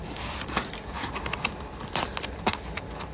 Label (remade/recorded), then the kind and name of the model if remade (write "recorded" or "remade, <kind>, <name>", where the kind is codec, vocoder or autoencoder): recorded